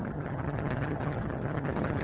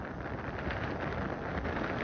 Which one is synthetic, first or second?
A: first